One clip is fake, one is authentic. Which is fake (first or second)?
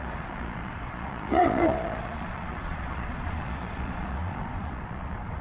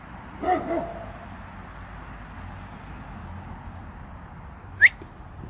first